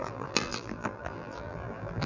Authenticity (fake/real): fake